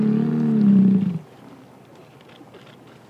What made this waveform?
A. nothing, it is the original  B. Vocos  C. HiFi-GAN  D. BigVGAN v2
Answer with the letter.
A